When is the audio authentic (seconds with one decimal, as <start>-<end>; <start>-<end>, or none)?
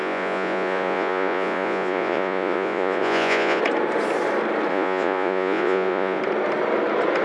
3.6-4.7; 6.2-7.2